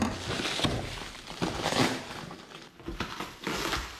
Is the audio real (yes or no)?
yes